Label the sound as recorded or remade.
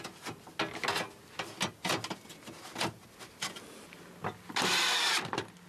recorded